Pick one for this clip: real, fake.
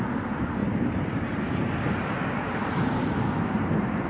fake